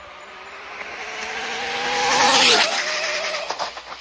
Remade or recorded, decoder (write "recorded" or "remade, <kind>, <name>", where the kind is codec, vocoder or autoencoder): remade, vocoder, BigVGAN v2